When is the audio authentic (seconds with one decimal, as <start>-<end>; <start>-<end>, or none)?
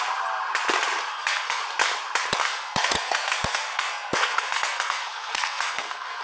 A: 0.0-1.1; 1.6-2.4